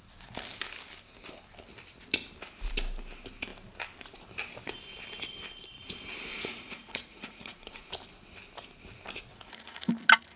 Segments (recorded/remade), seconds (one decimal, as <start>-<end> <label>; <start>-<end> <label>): 0.0-6.3 recorded; 6.3-7.9 remade; 7.9-9.3 recorded; 9.3-9.9 remade; 9.9-10.4 recorded